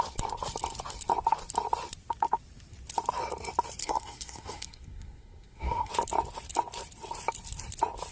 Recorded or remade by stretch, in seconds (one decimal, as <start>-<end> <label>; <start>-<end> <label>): 0.0-3.8 recorded; 3.8-5.9 remade; 5.9-8.1 recorded